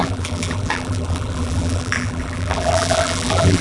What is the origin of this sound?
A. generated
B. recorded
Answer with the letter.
A